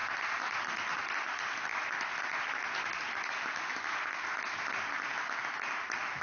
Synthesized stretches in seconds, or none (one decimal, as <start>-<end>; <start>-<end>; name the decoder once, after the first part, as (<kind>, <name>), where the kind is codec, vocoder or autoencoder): none